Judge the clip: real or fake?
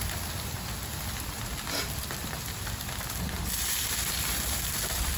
fake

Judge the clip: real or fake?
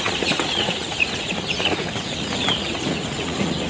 fake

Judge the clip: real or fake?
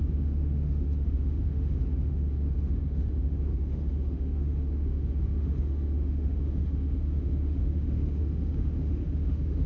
fake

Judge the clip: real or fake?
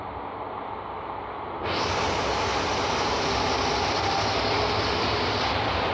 real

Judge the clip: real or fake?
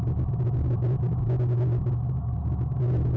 real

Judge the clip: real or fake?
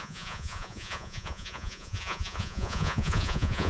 fake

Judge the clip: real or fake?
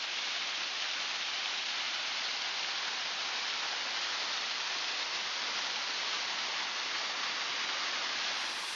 real